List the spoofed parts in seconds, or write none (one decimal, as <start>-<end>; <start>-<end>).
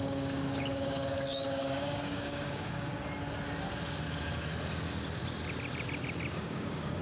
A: 0.0-2.9; 6.3-7.0